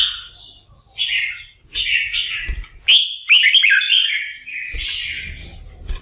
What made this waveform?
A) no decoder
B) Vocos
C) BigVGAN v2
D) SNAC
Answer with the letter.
A